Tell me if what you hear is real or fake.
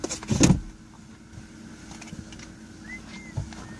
real